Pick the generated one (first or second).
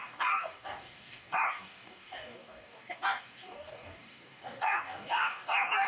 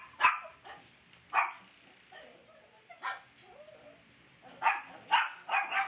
first